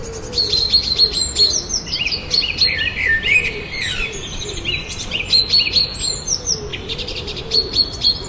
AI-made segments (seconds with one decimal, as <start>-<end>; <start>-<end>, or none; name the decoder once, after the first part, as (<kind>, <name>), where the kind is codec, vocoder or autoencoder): 2.9-5.2 (vocoder, BigVGAN v2); 6.7-7.4